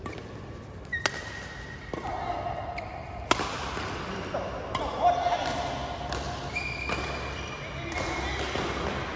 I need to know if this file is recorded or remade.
recorded